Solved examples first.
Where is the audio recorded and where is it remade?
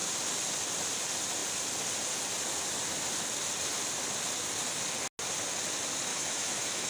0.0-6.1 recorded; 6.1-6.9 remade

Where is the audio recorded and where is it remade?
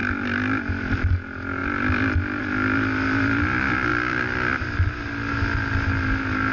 0.0-0.9 remade; 0.9-3.9 recorded; 3.9-5.3 remade; 5.3-6.5 recorded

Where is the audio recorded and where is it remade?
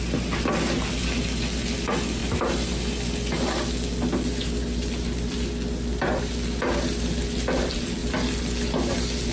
0.0-9.3 recorded